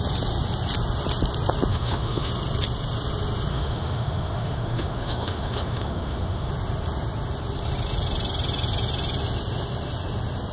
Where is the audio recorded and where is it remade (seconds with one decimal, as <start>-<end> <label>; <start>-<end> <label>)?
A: 0.0-1.7 recorded; 1.7-2.3 remade; 2.3-3.5 recorded; 3.5-6.5 remade; 6.5-10.5 recorded

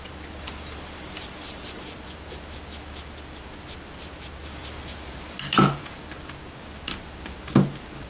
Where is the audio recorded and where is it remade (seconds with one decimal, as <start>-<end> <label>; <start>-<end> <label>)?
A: 0.0-8.1 recorded

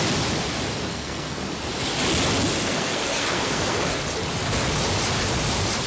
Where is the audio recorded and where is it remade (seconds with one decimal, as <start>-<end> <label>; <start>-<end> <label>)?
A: 0.0-0.9 recorded; 0.9-1.4 remade; 1.4-2.6 recorded; 2.6-3.9 remade; 3.9-5.9 recorded

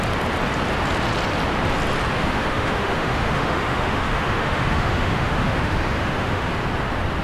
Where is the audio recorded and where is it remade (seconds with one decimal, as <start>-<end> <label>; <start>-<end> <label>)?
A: 0.0-2.2 recorded; 2.2-6.5 remade; 6.5-7.2 recorded

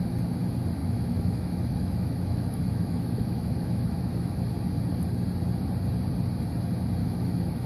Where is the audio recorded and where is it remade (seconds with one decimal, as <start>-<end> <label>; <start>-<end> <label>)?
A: 0.0-0.8 recorded; 0.8-4.4 remade; 4.4-7.0 recorded; 7.0-7.7 remade

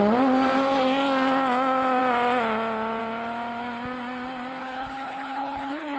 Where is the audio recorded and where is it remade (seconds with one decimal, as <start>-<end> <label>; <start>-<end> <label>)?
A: 0.0-4.6 recorded; 4.6-6.0 remade